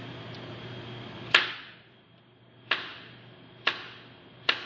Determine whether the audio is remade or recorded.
recorded